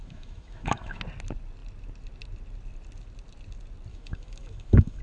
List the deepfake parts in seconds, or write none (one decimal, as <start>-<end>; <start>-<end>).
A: 0.0-1.0; 3.9-5.0